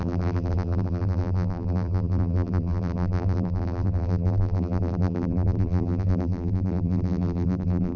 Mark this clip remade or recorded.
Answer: remade